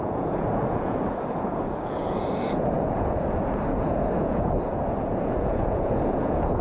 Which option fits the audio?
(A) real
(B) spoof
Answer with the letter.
B